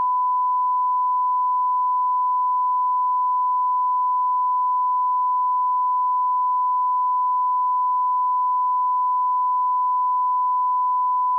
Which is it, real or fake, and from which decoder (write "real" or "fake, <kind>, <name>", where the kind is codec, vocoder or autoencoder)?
real